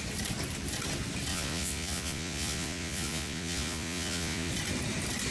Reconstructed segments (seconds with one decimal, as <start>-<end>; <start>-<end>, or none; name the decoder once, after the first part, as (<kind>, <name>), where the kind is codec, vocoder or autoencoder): 1.3-4.5 (vocoder, Vocos)